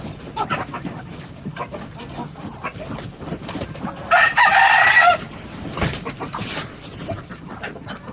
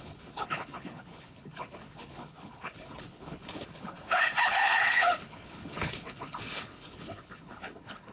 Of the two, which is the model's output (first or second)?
second